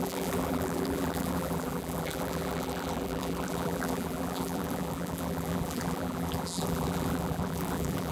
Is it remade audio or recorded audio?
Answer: remade